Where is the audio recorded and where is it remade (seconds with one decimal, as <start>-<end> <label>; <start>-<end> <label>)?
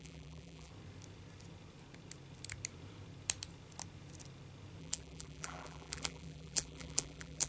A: 0.0-0.7 remade; 0.7-4.8 recorded; 4.8-7.5 remade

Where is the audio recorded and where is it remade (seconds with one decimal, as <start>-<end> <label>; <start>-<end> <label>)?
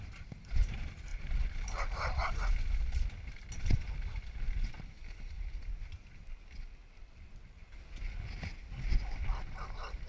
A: 0.0-1.1 recorded; 1.1-2.6 remade; 2.6-10.1 recorded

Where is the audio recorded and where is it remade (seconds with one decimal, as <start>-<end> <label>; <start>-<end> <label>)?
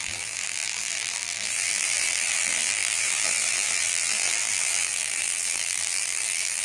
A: 0.0-6.6 remade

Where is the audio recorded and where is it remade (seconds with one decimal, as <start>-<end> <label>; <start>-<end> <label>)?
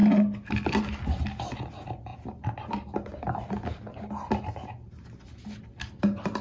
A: 0.0-6.4 recorded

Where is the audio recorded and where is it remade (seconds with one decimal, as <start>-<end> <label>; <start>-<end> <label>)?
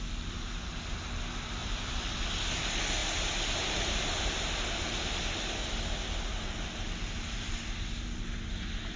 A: 0.0-1.6 recorded; 1.6-2.2 remade; 2.2-3.0 recorded; 3.0-6.0 remade; 6.0-9.0 recorded